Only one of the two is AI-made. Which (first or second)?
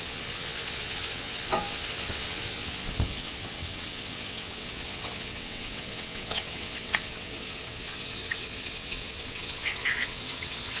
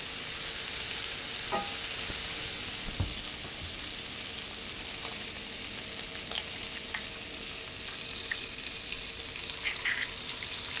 first